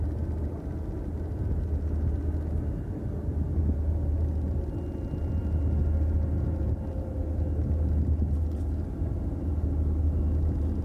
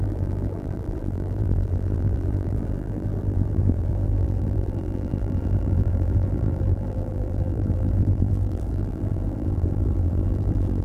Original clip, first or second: first